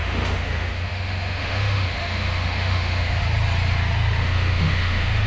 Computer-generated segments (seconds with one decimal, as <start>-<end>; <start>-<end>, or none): 0.0-3.2; 4.2-5.3

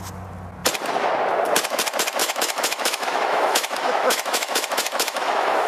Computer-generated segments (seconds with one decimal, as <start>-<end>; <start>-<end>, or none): 2.2-5.7

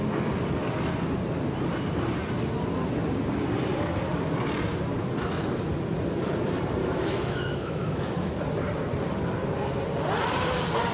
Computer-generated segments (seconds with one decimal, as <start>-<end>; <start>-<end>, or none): 6.8-8.3

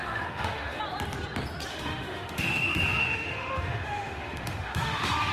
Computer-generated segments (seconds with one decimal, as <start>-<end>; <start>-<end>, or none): 0.0-0.8; 1.7-5.3

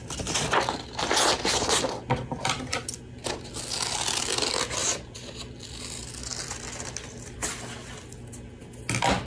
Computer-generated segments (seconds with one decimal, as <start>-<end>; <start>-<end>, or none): none

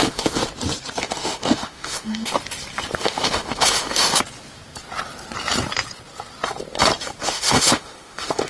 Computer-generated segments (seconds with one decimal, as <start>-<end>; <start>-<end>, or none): 0.0-0.4; 1.0-2.3; 3.0-4.1; 7.2-8.5

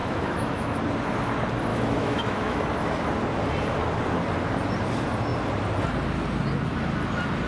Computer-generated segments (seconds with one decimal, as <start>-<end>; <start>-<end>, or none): 0.0-0.8; 1.7-2.6